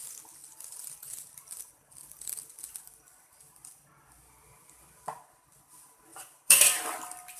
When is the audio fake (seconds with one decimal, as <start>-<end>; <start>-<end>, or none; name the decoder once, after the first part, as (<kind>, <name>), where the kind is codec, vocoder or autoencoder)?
0.4-3.9 (vocoder, BigVGAN v2); 6.1-7.4